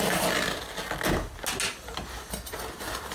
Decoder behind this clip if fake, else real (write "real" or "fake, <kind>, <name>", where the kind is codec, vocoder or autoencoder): real